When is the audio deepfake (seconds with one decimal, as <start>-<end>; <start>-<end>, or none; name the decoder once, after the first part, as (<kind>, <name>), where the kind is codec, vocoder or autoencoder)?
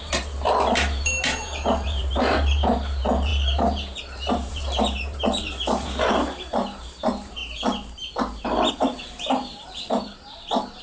0.0-7.4 (vocoder, BigVGAN v2); 8.7-10.8